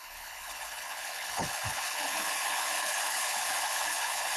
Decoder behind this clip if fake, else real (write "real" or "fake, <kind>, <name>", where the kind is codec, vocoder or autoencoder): fake, codec, HILCodec